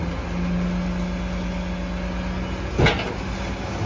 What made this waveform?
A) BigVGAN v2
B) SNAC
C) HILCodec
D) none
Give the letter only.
D